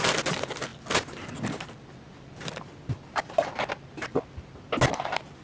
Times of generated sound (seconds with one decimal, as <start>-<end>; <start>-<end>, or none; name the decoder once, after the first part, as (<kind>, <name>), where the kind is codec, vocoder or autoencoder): none